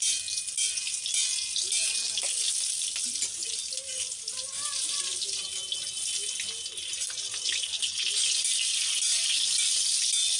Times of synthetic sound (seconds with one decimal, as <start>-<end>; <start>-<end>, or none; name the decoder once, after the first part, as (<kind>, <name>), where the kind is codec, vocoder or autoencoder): none